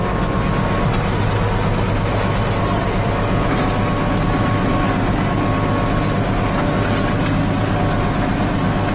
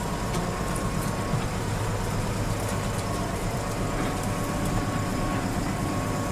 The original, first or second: first